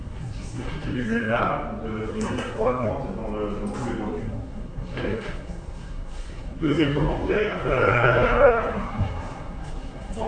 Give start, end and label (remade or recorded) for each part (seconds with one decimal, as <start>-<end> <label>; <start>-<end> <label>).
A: 0.0-1.5 remade; 1.5-2.1 recorded; 2.1-2.9 remade; 2.9-4.2 recorded; 4.2-10.3 remade